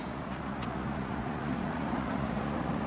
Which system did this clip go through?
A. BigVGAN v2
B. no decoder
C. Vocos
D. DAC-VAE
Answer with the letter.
C